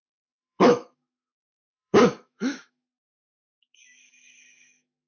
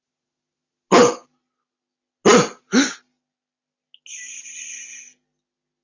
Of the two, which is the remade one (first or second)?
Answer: first